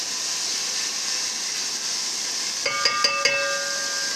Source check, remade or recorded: recorded